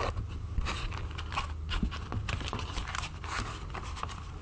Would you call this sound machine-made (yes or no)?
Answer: no